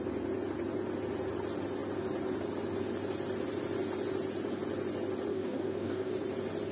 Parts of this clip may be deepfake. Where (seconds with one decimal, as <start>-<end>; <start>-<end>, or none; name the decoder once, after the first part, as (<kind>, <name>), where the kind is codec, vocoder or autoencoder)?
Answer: 5.3-6.1 (codec, DAC)